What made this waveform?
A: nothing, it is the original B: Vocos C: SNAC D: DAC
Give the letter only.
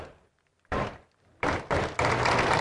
A